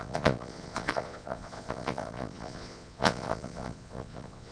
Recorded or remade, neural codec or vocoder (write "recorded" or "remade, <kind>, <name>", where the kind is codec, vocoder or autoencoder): remade, vocoder, Vocos